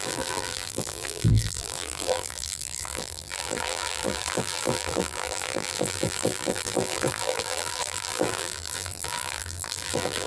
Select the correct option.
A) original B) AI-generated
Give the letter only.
B